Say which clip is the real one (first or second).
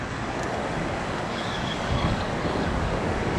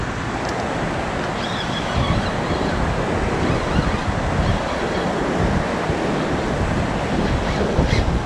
second